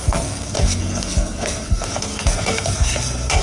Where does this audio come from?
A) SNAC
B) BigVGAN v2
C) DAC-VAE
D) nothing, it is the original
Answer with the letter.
A